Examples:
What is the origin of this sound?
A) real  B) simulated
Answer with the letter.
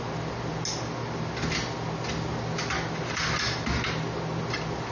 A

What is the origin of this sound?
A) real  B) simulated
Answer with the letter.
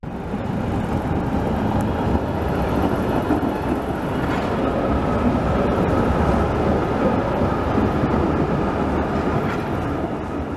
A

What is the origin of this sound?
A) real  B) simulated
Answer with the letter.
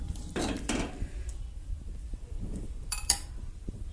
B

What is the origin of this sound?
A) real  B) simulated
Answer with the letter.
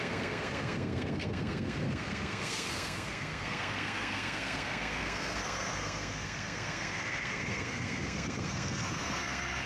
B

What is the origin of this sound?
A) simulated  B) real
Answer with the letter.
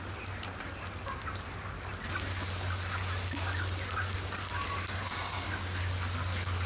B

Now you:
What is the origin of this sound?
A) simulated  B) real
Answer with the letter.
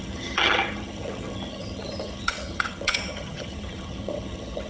A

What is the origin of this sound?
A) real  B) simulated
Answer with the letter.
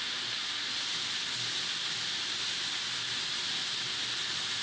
A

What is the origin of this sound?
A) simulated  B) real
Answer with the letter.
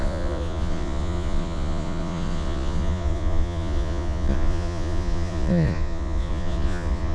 A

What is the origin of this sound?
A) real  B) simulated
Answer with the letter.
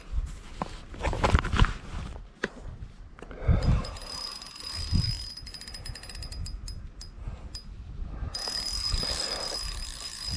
A